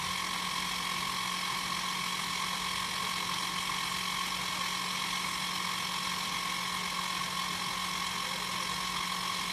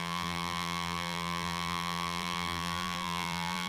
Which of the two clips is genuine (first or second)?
first